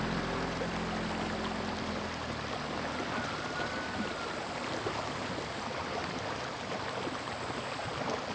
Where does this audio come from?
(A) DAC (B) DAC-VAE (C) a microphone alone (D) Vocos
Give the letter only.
C